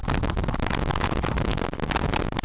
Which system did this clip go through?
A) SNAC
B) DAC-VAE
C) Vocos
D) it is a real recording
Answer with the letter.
D